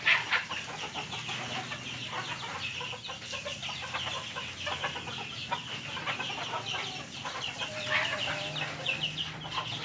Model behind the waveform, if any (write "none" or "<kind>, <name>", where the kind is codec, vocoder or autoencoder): none